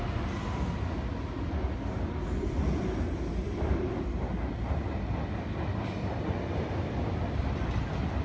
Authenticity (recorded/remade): recorded